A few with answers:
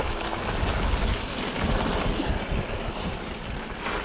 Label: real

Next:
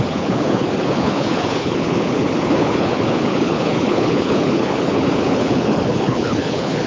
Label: fake